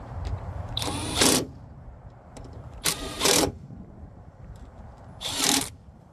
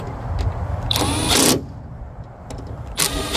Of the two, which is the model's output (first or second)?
first